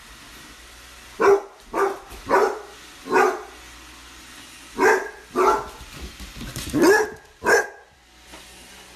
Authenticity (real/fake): real